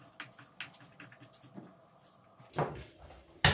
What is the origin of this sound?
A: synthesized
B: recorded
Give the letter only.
B